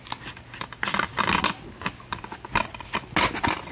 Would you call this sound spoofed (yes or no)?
no